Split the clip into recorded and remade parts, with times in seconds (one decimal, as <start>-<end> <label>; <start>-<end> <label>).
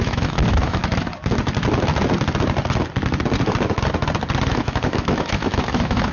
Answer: 0.0-0.8 remade; 0.8-4.5 recorded; 4.5-6.1 remade